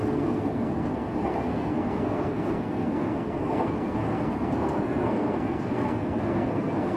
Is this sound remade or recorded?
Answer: remade